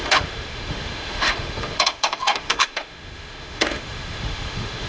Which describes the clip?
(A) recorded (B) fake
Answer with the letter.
B